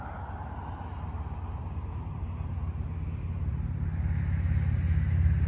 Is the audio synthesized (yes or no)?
no